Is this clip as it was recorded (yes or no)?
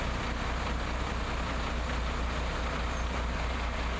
yes